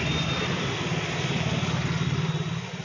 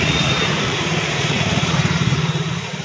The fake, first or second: second